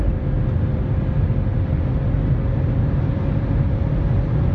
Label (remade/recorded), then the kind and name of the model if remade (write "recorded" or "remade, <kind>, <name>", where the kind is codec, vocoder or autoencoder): recorded